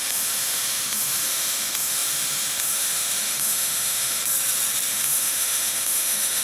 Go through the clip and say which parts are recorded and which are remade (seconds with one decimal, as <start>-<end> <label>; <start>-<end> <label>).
0.0-4.2 remade; 4.2-4.9 recorded; 4.9-6.4 remade